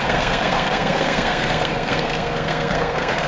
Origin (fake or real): fake